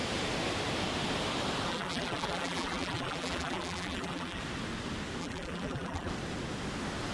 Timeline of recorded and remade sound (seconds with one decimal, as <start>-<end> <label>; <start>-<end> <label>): 0.0-1.7 recorded; 1.7-4.4 remade; 4.4-5.2 recorded; 5.2-6.1 remade; 6.1-7.1 recorded